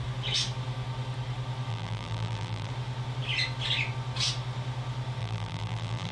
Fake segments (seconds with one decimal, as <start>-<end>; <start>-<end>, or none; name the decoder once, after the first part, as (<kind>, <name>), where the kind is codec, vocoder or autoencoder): 1.7-2.7 (vocoder, BigVGAN v2); 5.2-6.1